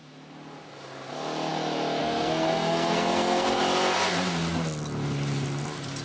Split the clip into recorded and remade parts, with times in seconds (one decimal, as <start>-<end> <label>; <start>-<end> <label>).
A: 0.0-2.0 recorded; 2.0-3.6 remade; 3.6-6.0 recorded